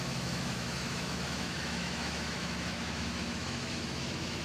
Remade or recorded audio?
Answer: remade